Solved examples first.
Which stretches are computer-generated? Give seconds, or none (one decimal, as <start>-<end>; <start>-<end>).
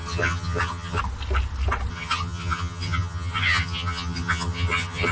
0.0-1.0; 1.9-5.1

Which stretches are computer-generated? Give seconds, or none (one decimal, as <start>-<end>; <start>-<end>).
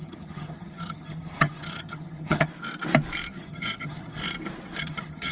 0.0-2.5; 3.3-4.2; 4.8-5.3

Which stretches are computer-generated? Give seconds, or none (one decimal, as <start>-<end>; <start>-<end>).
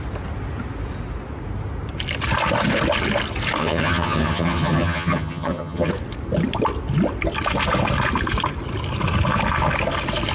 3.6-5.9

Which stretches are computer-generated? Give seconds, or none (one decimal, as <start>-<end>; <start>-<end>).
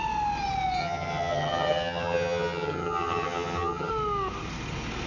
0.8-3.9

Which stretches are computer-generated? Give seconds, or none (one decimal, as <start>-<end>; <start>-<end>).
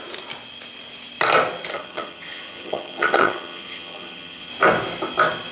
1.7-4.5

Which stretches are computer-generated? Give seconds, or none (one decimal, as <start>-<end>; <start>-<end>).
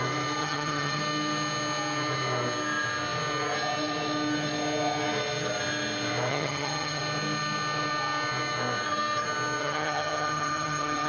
0.4-1.0; 6.3-7.0; 9.6-11.1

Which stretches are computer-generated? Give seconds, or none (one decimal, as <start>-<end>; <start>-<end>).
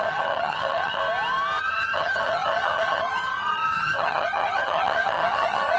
0.0-1.0; 1.6-5.8